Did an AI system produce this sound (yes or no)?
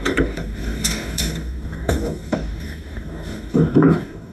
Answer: yes